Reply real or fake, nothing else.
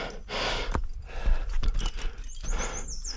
real